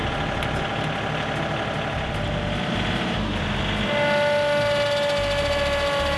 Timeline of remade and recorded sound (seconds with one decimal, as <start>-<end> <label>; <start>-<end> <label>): 0.0-6.2 recorded